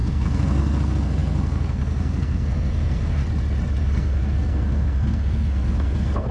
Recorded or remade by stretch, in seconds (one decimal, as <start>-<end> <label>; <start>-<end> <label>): 0.0-3.2 remade; 3.2-3.8 recorded; 3.8-6.3 remade